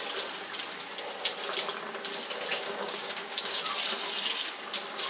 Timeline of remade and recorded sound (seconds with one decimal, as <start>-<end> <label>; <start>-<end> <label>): 0.0-2.5 recorded; 2.5-3.6 remade; 3.6-5.1 recorded